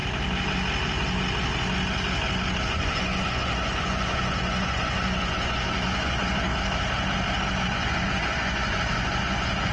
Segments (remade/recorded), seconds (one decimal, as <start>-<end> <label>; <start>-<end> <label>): 0.0-2.7 recorded; 2.7-6.5 remade; 6.5-7.6 recorded; 7.6-9.7 remade

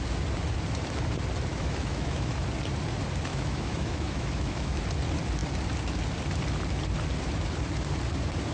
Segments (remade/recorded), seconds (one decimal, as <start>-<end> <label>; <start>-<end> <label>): 0.0-1.5 recorded; 1.5-2.3 remade; 2.3-3.3 recorded; 3.3-4.8 remade; 4.8-8.5 recorded

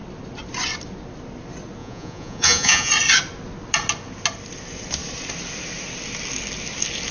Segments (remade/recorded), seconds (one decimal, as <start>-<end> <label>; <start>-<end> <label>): 0.0-1.8 recorded; 1.8-2.9 remade; 2.9-7.1 recorded

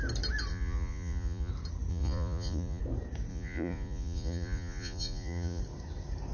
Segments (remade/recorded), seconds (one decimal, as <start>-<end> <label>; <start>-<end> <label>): 0.0-0.5 recorded; 0.5-1.5 remade; 1.5-1.9 recorded; 1.9-2.8 remade; 2.8-3.3 recorded; 3.3-5.6 remade; 5.6-6.3 recorded